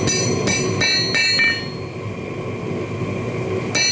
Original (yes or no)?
yes